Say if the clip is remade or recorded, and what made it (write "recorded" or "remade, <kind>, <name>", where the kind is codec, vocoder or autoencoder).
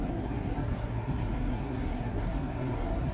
remade, codec, SNAC